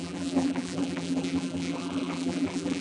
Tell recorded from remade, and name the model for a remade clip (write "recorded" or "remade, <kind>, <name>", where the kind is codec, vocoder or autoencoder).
remade, vocoder, BigVGAN v2